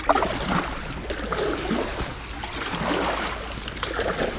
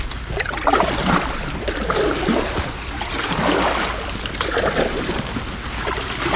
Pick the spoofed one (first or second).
second